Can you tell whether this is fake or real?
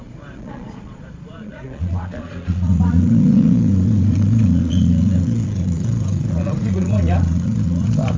fake